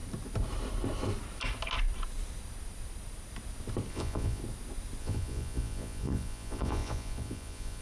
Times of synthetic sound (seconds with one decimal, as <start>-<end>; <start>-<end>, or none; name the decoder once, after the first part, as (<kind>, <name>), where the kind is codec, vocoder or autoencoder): 3.9-4.4 (vocoder, Vocos); 5.0-7.8